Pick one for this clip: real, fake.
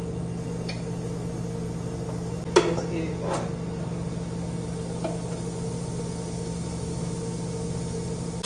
real